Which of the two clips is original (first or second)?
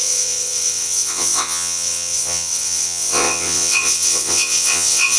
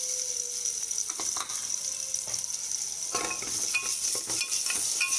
second